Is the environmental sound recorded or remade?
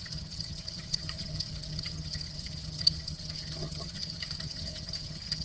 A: remade